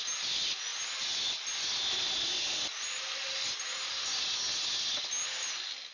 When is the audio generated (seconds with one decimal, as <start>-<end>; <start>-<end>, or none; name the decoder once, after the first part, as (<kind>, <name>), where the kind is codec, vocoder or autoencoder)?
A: none